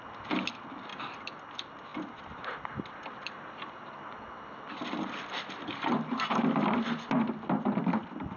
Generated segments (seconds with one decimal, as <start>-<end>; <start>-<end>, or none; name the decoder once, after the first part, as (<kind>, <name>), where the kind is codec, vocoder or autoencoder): 0.9-1.5 (vocoder, BigVGAN v2); 1.9-5.4